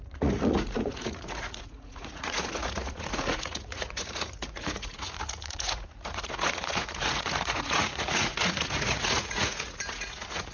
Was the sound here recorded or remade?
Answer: remade